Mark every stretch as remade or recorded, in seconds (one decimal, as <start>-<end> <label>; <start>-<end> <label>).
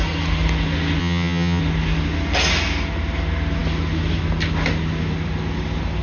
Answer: 0.0-1.0 recorded; 1.0-1.6 remade; 1.6-6.0 recorded